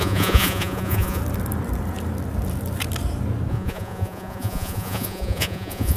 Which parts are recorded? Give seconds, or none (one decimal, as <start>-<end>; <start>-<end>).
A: 1.2-3.5